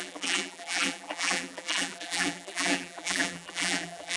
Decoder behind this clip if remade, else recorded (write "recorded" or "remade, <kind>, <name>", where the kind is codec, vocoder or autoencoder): remade, vocoder, BigVGAN v2